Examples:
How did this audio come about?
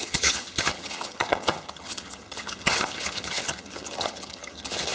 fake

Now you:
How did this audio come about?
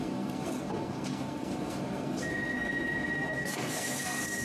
fake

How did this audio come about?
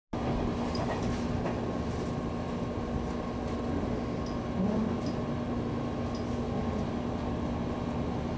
real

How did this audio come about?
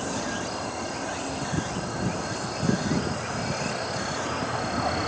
real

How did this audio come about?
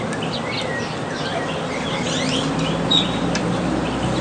real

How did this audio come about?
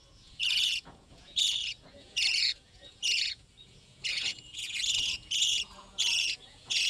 fake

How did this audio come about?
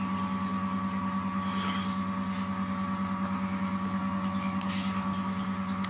real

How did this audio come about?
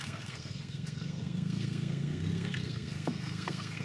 fake